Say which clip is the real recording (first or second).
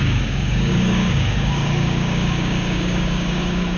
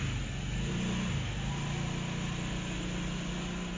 second